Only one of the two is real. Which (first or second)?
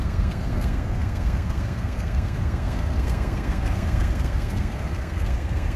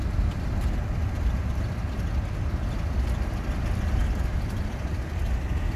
second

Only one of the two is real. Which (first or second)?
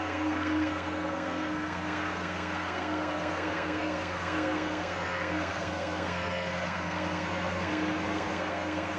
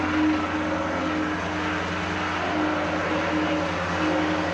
second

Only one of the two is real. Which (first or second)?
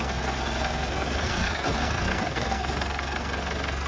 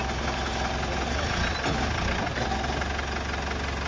second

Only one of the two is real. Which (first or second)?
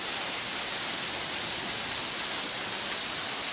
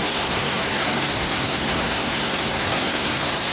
first